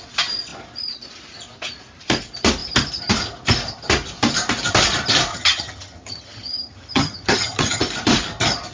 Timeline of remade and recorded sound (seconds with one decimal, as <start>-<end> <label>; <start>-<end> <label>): 0.0-5.3 recorded; 5.3-7.8 remade; 7.8-8.7 recorded